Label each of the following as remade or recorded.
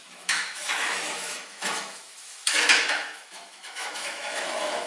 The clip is remade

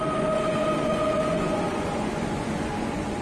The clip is remade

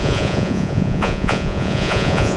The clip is remade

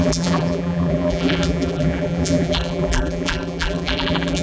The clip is remade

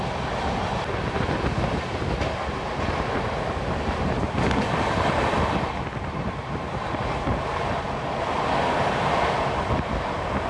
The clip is recorded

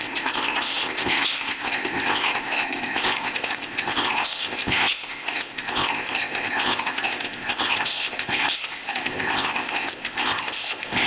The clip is remade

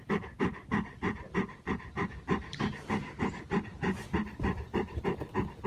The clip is recorded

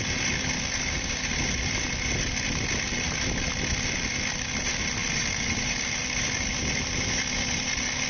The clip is recorded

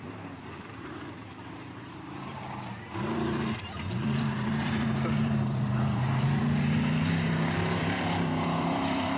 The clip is remade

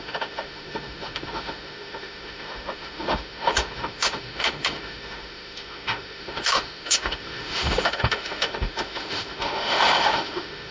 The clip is remade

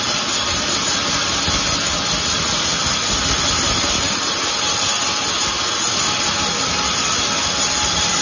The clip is recorded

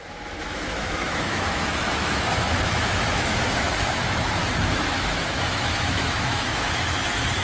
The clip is remade